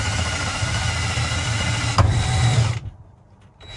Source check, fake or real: real